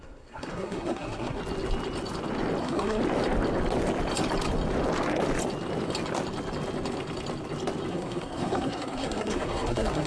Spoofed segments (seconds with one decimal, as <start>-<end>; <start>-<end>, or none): 0.0-1.4; 2.6-3.0; 7.9-10.1